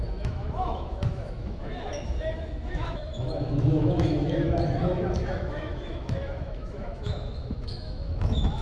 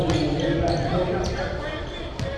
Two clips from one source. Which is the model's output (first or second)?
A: first